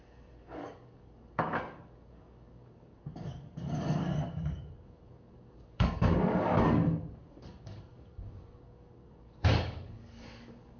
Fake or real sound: fake